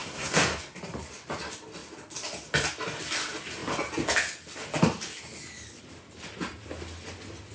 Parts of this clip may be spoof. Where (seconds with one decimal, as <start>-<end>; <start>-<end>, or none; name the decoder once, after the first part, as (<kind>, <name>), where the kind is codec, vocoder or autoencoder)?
0.0-0.8 (codec, SNAC)